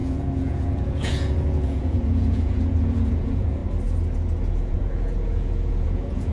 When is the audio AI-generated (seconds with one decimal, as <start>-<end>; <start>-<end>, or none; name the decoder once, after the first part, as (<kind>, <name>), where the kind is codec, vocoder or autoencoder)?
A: 0.0-3.6 (vocoder, Vocos); 4.5-6.3